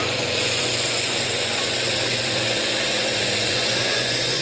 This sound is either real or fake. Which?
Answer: fake